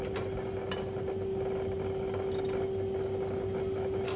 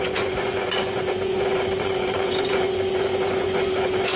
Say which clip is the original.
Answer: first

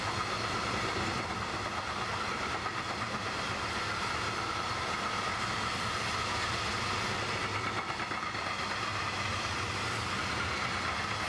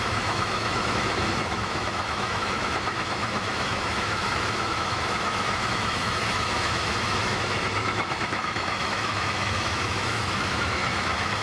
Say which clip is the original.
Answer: first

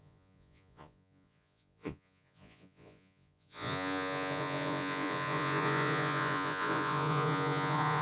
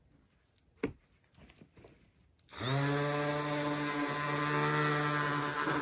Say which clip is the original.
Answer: second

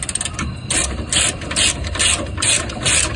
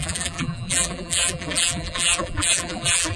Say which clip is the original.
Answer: first